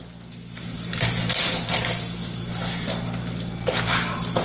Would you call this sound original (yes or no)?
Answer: yes